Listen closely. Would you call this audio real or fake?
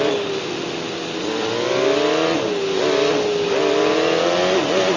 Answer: real